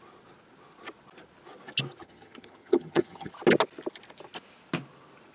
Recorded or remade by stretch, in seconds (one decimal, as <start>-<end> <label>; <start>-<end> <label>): 0.0-2.0 recorded; 2.0-3.3 remade; 3.3-5.3 recorded